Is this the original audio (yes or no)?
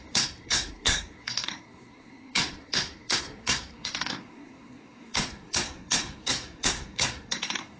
no